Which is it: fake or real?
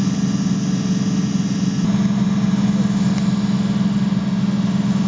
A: real